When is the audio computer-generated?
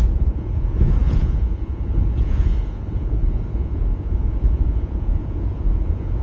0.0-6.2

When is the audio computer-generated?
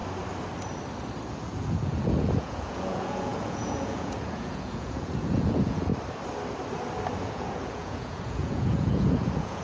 1.3-5.9; 7.2-9.6